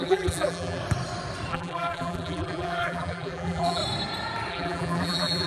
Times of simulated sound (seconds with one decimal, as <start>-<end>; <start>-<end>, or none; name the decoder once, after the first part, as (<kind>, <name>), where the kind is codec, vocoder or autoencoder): 0.0-0.8 (vocoder, BigVGAN v2); 1.5-3.8; 4.5-5.5